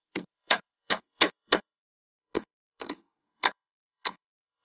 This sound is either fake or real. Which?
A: fake